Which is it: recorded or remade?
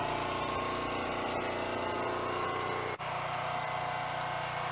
recorded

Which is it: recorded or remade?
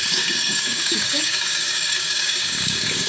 remade